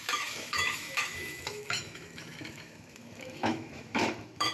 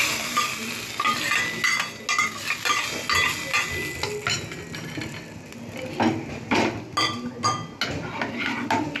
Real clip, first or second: second